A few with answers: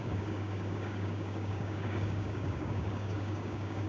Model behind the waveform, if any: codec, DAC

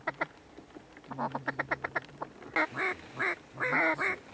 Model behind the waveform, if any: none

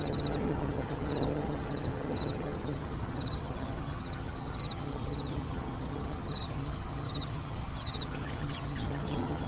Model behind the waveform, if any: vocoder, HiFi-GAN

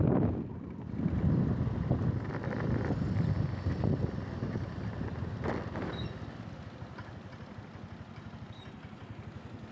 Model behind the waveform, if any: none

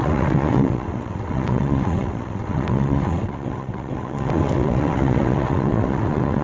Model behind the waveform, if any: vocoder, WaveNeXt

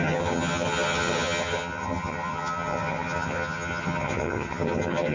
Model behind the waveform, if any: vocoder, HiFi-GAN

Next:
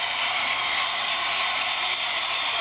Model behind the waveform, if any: none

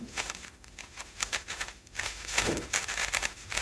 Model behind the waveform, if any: autoencoder, DAC-VAE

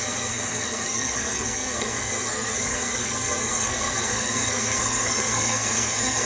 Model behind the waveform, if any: codec, SNAC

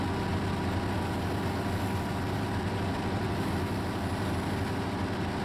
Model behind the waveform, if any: none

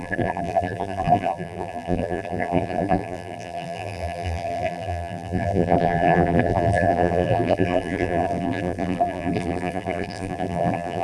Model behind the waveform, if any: vocoder, BigVGAN v2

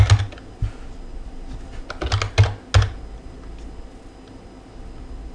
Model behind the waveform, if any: none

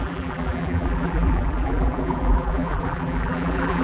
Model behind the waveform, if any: vocoder, BigVGAN v2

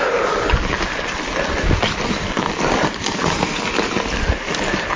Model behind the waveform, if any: none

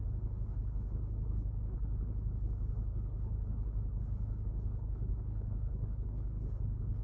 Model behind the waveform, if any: codec, HILCodec